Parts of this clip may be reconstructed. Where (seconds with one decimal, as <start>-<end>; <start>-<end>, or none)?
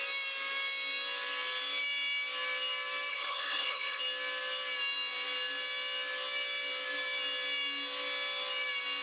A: 3.1-4.0